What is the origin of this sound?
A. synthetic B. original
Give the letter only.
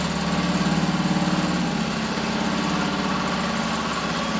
B